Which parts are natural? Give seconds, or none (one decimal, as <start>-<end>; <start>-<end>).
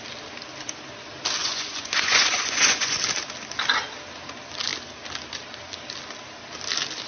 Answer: 0.0-1.4; 3.0-7.1